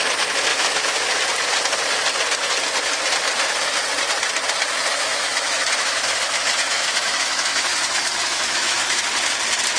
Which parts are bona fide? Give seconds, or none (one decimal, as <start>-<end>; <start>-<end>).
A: 0.0-0.5; 1.1-4.9; 9.0-9.8